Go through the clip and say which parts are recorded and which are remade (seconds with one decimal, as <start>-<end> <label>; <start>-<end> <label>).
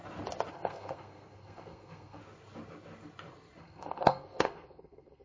0.0-0.5 recorded; 0.5-2.2 remade; 2.2-3.6 recorded; 3.6-5.2 remade